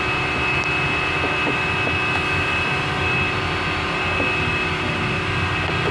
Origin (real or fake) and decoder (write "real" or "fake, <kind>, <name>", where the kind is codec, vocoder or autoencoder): real